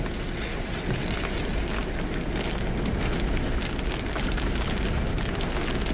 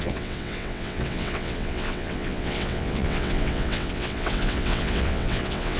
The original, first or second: first